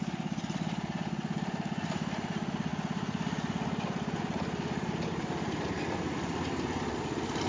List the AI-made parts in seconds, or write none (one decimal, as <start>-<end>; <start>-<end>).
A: none